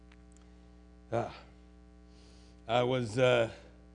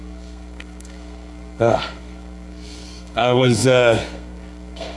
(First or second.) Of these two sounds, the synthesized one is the second